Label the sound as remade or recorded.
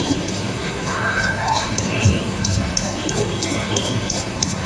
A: remade